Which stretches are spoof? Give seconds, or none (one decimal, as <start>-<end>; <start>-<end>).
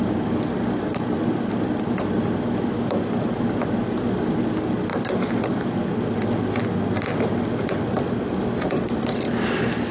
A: none